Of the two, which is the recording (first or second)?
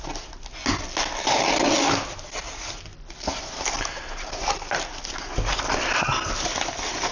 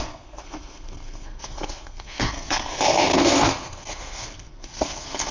first